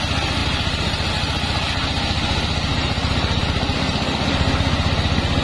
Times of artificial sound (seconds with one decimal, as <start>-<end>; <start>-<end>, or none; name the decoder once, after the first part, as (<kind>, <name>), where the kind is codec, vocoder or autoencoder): 0.4-1.1 (vocoder, BigVGAN v2); 2.7-3.4